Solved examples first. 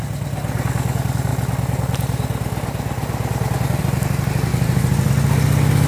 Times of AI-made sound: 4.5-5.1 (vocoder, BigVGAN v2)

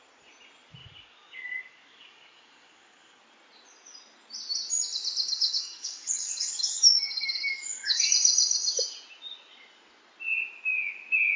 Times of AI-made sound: 0.8-3.2 (codec, DAC); 5.3-8.1

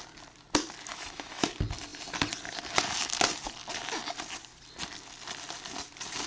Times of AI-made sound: 0.9-1.5 (autoencoder, DAC-VAE)

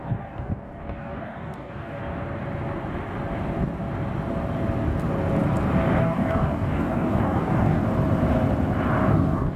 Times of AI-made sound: 0.0-2.0 (codec, DAC); 6.0-7.8; 9.1-9.6

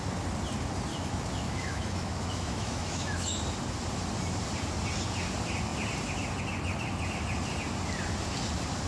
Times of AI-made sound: 0.9-3.4 (autoencoder, DAC-VAE)

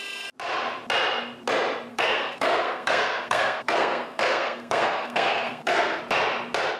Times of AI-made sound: 1.9-6.0 (codec, SNAC)